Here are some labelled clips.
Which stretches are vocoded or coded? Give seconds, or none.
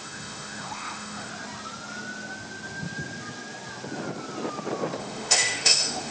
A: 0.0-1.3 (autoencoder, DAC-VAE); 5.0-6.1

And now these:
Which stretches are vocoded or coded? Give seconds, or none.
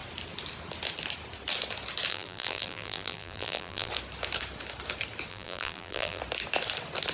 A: 2.1-3.9 (vocoder, BigVGAN v2); 5.3-6.2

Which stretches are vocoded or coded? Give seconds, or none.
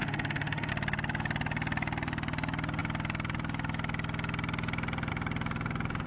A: 0.0-0.7 (autoencoder, DAC-VAE)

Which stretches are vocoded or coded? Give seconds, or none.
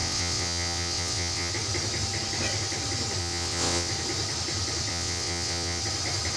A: 0.0-1.5 (vocoder, WaveNeXt); 3.2-3.9; 4.9-5.8